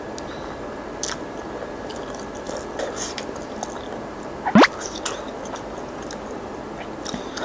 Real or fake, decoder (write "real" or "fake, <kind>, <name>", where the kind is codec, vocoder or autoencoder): real